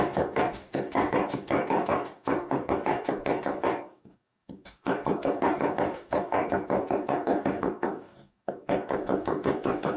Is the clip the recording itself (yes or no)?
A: no